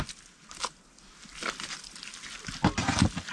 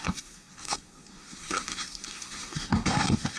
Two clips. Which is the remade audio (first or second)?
second